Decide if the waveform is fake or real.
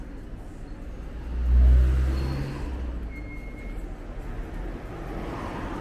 real